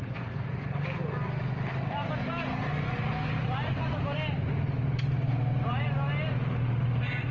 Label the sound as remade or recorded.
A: recorded